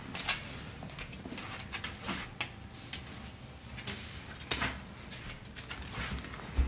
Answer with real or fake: real